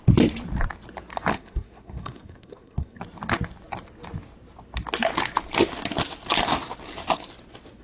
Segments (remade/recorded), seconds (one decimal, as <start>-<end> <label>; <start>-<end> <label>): 0.0-1.3 recorded; 1.3-3.0 remade; 3.0-7.8 recorded